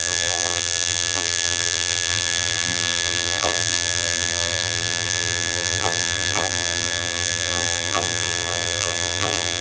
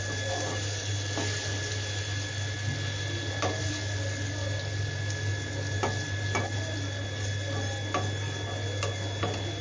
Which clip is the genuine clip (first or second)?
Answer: second